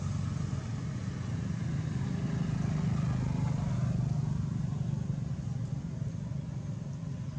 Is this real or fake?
real